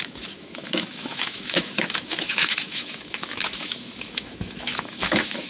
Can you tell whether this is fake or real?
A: fake